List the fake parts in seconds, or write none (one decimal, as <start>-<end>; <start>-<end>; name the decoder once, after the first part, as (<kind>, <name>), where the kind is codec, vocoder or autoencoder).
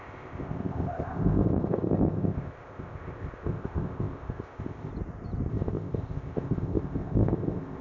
0.0-4.9 (codec, ZipCodec); 5.5-7.8